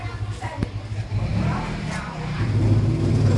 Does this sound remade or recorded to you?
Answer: recorded